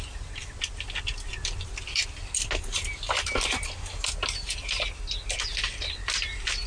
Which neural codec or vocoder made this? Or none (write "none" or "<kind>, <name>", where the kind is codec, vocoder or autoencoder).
none